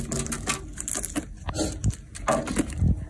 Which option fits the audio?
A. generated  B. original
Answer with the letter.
B